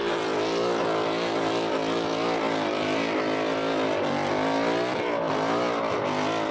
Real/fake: real